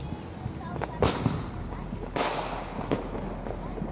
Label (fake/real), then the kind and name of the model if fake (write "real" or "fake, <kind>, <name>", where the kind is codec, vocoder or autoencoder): real